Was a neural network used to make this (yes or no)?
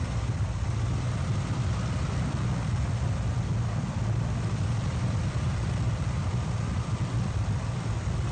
yes